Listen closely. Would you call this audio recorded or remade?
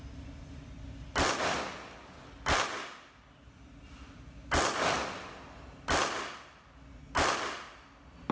recorded